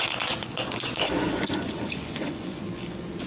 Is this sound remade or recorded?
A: remade